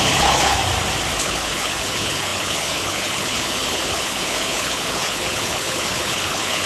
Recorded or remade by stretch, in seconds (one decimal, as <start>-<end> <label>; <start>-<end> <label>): 0.0-0.6 remade; 0.6-1.2 recorded; 1.2-6.7 remade